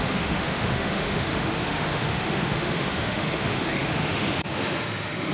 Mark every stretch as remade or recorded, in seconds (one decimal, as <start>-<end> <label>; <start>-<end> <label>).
0.0-5.3 remade